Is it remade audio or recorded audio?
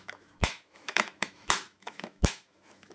remade